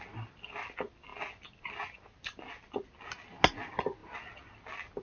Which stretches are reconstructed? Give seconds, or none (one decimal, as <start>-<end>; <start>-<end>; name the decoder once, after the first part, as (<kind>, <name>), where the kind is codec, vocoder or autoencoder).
none